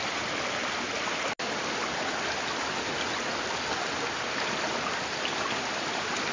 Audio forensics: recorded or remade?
recorded